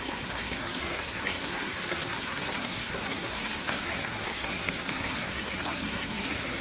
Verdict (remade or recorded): remade